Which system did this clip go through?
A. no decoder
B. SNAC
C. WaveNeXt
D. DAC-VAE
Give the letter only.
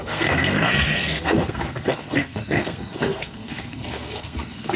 B